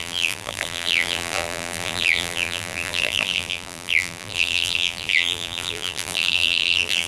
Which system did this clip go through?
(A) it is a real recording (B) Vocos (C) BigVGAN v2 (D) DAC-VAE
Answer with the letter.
C